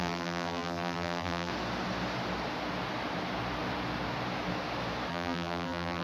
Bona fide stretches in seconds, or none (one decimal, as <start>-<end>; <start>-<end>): 1.5-5.1